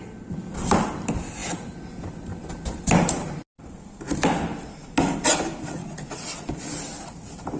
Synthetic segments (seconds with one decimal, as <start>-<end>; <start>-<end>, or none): 5.8-6.5